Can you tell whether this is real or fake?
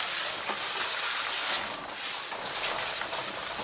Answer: real